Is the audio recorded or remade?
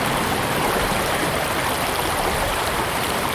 remade